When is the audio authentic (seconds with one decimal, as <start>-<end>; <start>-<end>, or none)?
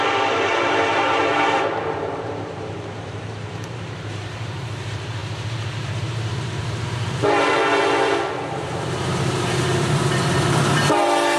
7.6-8.3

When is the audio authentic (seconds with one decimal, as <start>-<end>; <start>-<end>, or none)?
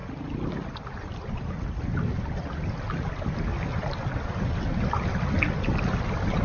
0.0-6.4